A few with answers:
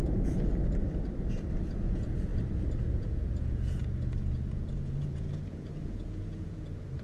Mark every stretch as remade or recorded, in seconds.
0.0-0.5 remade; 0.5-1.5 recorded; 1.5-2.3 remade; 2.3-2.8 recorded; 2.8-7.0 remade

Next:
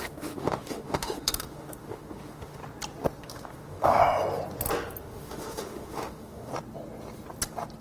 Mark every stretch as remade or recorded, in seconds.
0.0-2.6 remade; 2.6-3.2 recorded; 3.2-4.0 remade; 4.0-5.0 recorded; 5.0-6.5 remade; 6.5-7.8 recorded